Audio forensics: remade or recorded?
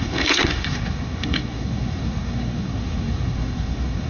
remade